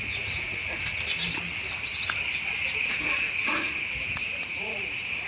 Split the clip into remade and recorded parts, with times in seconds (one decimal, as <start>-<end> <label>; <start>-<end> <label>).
0.0-0.6 remade; 0.6-2.7 recorded; 2.7-5.3 remade